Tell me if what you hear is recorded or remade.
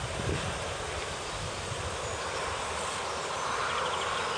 recorded